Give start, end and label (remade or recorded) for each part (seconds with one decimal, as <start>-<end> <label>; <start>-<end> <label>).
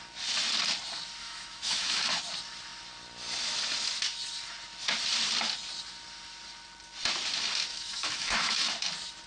0.0-1.2 recorded; 1.2-2.2 remade; 2.2-7.7 recorded; 7.7-8.7 remade; 8.7-9.3 recorded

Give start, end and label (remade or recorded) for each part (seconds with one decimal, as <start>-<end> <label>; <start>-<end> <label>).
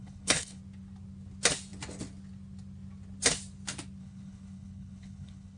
0.0-0.6 remade; 0.6-4.0 recorded; 4.0-5.6 remade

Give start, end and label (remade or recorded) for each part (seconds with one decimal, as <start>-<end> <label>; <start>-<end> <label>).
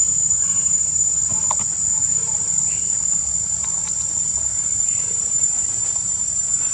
0.0-1.2 remade; 1.2-5.2 recorded; 5.2-6.7 remade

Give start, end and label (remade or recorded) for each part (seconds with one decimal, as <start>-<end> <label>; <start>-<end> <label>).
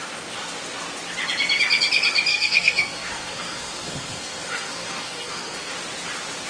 0.0-2.3 recorded; 2.3-5.7 remade; 5.7-6.5 recorded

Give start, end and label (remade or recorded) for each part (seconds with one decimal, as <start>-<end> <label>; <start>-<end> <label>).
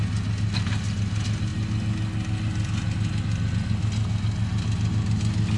0.0-5.6 recorded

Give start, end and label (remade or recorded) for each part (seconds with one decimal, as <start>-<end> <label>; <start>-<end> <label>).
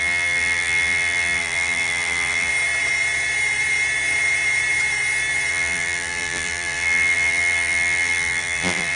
0.0-2.5 remade; 2.5-5.5 recorded; 5.5-9.0 remade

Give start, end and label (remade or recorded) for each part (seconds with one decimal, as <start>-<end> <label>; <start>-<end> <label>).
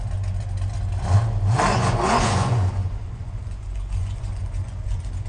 0.0-1.7 recorded; 1.7-5.3 remade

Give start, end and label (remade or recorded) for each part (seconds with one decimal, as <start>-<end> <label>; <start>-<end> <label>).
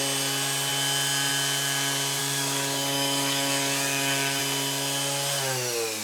0.0-2.2 recorded; 2.2-4.4 remade; 4.4-6.0 recorded